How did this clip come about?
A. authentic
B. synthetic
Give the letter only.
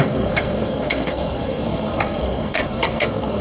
B